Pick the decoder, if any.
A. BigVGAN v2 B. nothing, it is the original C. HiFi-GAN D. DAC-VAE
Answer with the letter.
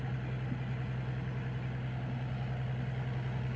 B